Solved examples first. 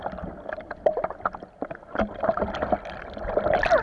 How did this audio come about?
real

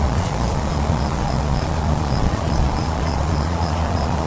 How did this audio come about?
fake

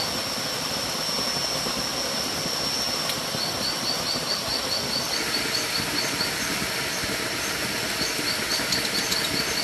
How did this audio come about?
real